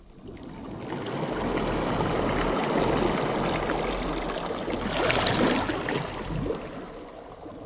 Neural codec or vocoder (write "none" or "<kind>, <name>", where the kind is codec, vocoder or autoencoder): none